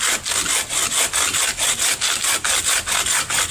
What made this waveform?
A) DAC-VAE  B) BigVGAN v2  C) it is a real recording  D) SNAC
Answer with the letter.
C